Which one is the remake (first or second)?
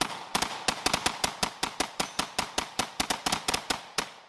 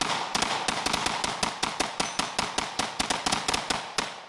first